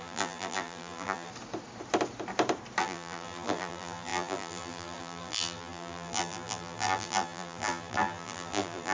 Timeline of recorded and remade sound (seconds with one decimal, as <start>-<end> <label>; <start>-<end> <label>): 0.0-1.3 remade; 1.3-2.8 recorded; 2.8-8.9 remade